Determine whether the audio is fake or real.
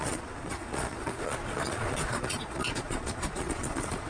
fake